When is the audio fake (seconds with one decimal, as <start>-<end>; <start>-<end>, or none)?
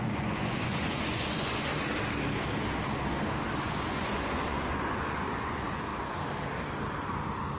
0.0-1.7; 3.6-5.9